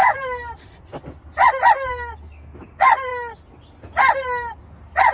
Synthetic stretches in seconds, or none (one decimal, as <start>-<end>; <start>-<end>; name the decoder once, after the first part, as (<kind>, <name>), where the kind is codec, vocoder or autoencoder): none